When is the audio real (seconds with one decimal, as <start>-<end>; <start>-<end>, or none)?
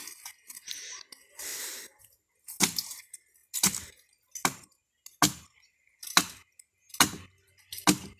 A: 0.0-1.5; 2.0-8.2